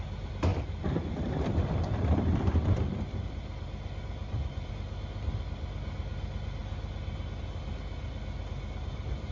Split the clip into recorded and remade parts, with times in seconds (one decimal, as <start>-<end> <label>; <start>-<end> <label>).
0.0-0.5 recorded; 0.5-4.7 remade; 4.7-9.3 recorded

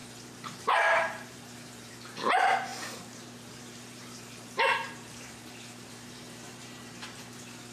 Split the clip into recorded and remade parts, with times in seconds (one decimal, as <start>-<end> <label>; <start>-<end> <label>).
0.0-1.9 remade; 1.9-2.7 recorded; 2.7-7.3 remade; 7.3-7.7 recorded

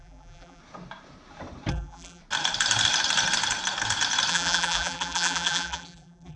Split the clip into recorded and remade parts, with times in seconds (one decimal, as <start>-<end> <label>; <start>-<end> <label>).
0.0-0.6 remade; 0.6-1.7 recorded; 1.7-2.2 remade; 2.2-4.3 recorded; 4.3-6.4 remade

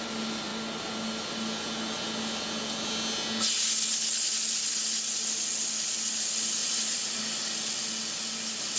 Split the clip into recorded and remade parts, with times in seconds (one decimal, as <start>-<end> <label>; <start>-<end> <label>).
0.0-6.6 recorded; 6.6-7.2 remade; 7.2-8.8 recorded

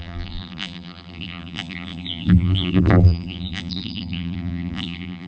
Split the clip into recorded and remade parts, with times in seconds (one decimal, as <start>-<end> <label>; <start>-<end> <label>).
0.0-5.3 remade

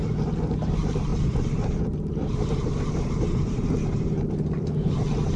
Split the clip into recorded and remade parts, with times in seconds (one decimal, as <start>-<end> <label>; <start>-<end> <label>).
0.0-5.4 recorded

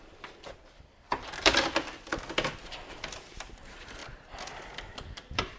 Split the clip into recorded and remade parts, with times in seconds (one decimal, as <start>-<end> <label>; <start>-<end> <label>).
0.0-2.1 remade; 2.1-2.9 recorded; 2.9-4.0 remade; 4.0-4.7 recorded; 4.7-5.6 remade